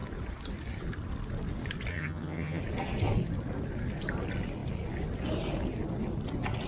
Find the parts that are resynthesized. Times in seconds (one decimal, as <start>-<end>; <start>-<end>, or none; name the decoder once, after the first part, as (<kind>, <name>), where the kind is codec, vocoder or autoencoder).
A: 1.9-2.6 (vocoder, HiFi-GAN)